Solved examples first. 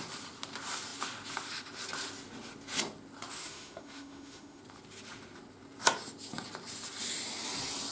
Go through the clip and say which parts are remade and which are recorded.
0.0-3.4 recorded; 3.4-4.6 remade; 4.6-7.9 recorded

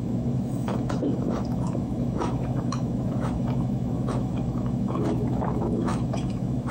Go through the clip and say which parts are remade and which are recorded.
0.0-6.7 remade

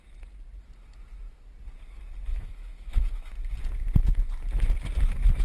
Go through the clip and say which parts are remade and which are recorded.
0.0-2.3 recorded; 2.3-3.3 remade; 3.3-5.4 recorded

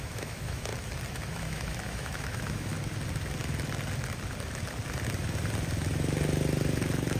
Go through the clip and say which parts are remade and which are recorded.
0.0-0.7 remade; 0.7-1.3 recorded; 1.3-2.7 remade; 2.7-7.2 recorded

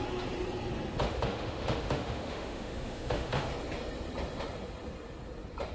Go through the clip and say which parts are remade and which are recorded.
0.0-1.0 recorded; 1.0-3.5 remade; 3.5-5.7 recorded

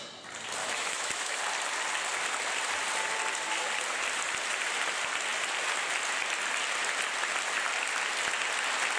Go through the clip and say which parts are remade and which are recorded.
0.0-0.6 recorded; 0.6-1.4 remade; 1.4-9.0 recorded

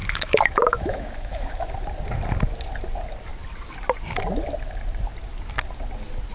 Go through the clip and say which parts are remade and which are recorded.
0.0-1.7 remade; 1.7-6.3 recorded

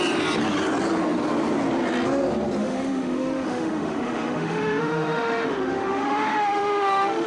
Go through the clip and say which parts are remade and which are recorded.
0.0-2.6 recorded; 2.6-7.3 remade